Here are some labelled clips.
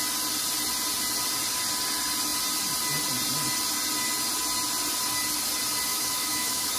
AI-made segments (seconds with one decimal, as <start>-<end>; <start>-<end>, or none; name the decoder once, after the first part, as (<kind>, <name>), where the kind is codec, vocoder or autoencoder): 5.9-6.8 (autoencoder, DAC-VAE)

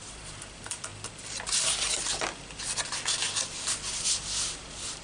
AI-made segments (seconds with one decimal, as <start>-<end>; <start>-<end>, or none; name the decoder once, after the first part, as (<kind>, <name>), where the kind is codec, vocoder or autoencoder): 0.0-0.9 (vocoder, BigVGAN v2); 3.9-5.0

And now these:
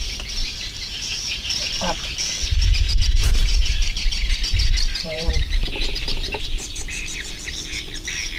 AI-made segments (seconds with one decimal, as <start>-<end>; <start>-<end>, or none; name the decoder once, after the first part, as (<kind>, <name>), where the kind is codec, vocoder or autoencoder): 0.4-1.4 (vocoder, BigVGAN v2); 3.2-7.3